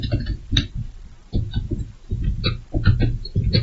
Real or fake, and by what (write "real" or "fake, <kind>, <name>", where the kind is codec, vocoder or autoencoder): real